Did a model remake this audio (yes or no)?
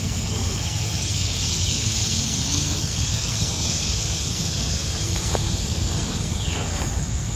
yes